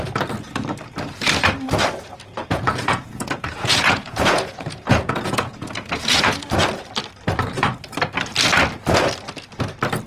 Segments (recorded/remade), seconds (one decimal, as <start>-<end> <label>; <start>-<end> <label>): 0.0-2.4 recorded; 2.4-6.5 remade; 6.5-10.1 recorded